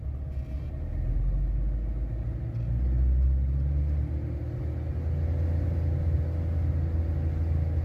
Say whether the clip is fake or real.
real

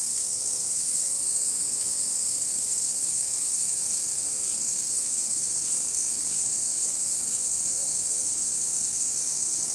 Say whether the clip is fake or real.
fake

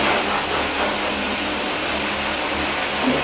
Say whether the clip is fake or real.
real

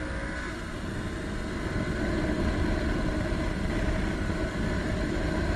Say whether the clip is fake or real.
real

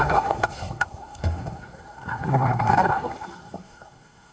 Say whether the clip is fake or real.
fake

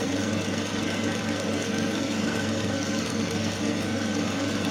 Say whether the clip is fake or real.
fake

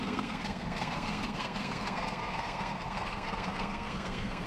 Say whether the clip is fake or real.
fake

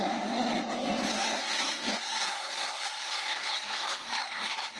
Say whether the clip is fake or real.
fake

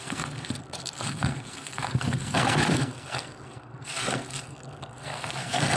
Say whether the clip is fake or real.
fake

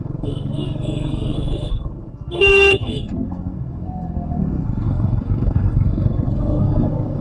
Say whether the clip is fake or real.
fake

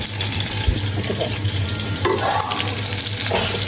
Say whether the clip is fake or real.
real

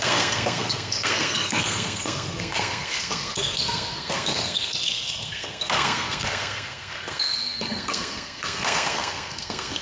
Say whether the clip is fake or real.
fake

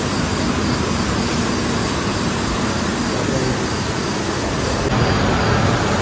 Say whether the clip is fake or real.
real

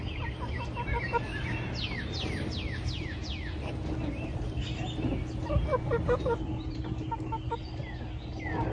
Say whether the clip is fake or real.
real